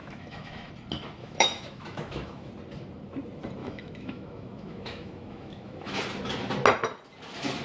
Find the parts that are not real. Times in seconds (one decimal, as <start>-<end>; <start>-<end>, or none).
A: 0.0-0.7; 1.2-2.5; 3.6-6.0

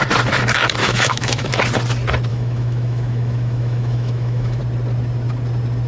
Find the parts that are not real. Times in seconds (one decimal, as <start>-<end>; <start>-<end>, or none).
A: 0.8-1.5; 2.3-4.6